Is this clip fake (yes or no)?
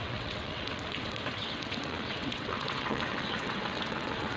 yes